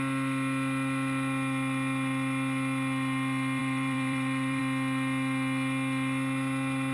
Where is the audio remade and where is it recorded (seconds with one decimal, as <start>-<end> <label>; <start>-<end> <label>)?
0.0-3.6 recorded; 3.6-4.6 remade; 4.6-6.9 recorded